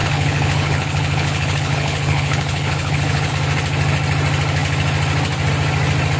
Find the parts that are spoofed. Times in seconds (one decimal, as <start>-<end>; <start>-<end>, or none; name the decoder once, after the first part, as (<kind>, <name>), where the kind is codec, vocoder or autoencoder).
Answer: 0.0-3.3 (codec, HILCodec)